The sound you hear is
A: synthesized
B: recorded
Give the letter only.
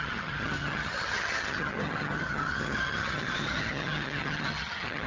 A